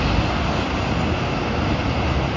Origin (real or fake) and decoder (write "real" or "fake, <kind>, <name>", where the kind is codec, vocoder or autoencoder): real